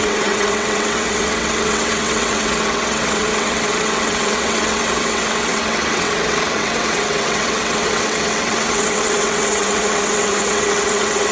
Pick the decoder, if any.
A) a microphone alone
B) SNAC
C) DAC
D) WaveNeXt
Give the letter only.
D